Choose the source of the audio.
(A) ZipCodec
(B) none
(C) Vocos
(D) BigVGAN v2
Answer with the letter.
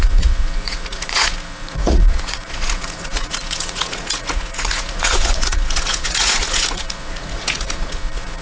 C